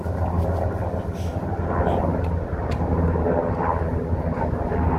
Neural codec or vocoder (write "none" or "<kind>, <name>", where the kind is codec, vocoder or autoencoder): none